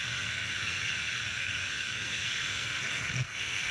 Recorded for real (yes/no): no